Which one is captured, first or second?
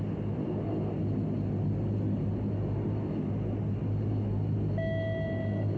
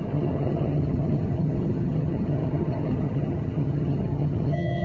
first